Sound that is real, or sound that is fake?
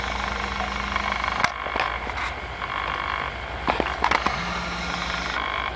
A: real